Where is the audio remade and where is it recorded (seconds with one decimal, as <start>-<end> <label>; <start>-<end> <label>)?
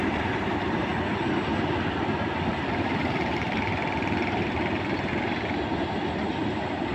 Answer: 0.0-0.9 remade; 0.9-2.5 recorded; 2.5-6.9 remade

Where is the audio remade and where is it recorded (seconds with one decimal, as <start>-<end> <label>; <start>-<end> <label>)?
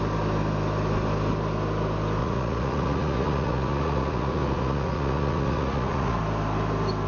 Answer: 0.0-2.2 recorded; 2.2-6.2 remade; 6.2-7.1 recorded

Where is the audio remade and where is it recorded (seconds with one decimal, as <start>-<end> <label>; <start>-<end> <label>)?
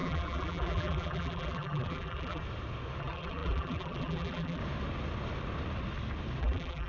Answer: 0.0-2.4 remade; 2.4-3.0 recorded; 3.0-4.6 remade; 4.6-6.4 recorded; 6.4-6.9 remade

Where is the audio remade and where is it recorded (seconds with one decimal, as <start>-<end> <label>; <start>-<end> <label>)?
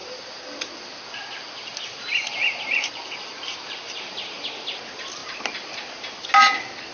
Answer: 0.0-0.7 remade; 0.7-2.4 recorded; 2.4-4.1 remade; 4.1-6.9 recorded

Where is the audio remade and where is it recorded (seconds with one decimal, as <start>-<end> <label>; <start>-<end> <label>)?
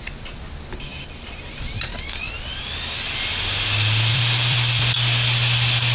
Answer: 0.0-0.9 recorded; 0.9-3.2 remade; 3.2-4.1 recorded; 4.1-4.8 remade; 4.8-5.9 recorded